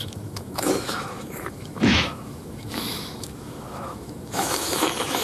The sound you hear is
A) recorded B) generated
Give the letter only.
B